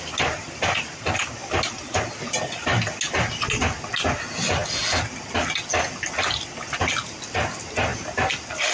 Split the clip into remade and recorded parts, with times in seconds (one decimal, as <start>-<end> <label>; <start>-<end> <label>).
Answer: 0.0-8.7 recorded